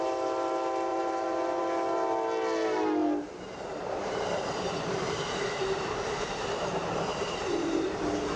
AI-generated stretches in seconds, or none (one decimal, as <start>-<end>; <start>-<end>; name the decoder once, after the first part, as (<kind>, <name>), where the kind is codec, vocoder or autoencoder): 0.9-1.6 (vocoder, BigVGAN v2); 3.0-8.0